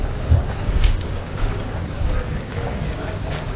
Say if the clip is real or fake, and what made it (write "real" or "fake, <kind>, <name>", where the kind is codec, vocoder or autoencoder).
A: fake, codec, DAC